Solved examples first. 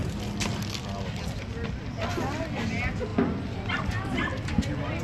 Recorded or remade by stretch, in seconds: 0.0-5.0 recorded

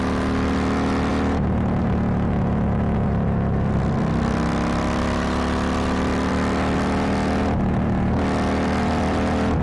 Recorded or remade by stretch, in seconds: 0.0-9.6 recorded

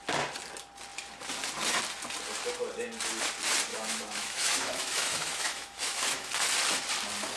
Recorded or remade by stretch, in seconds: 0.0-3.7 recorded; 3.7-6.3 remade; 6.3-7.4 recorded

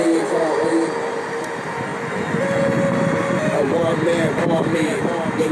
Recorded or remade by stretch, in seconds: 0.0-4.4 recorded; 4.4-4.9 remade; 4.9-5.5 recorded

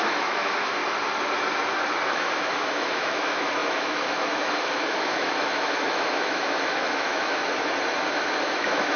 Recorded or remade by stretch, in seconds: 0.0-0.8 remade; 0.8-2.1 recorded; 2.1-7.4 remade; 7.4-8.1 recorded; 8.1-9.0 remade

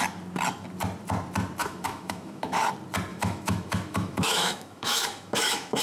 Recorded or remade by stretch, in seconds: 0.0-1.6 recorded; 1.6-2.6 remade; 2.6-3.1 recorded; 3.1-5.8 remade

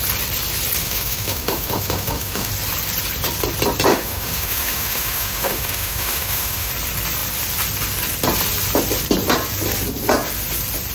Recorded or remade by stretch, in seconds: 0.0-0.8 recorded; 0.8-2.5 remade; 2.5-3.9 recorded; 3.9-6.7 remade; 6.7-10.9 recorded

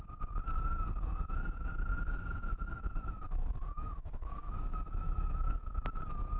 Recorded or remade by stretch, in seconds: 0.0-2.0 recorded; 2.0-5.8 remade; 5.8-6.4 recorded